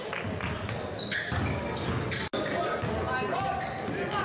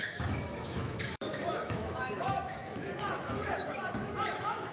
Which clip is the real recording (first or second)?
first